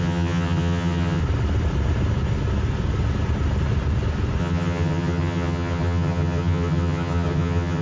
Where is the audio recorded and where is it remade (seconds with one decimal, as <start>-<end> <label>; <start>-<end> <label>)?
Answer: 0.0-1.2 remade; 1.2-4.4 recorded; 4.4-7.8 remade